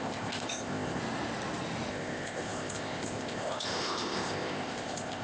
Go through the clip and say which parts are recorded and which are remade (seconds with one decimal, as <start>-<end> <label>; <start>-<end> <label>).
0.0-1.0 remade; 1.0-1.9 recorded; 1.9-5.2 remade